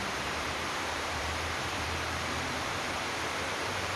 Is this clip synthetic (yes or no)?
yes